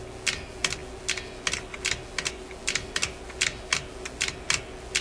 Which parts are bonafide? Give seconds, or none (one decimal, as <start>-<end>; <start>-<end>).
0.0-5.0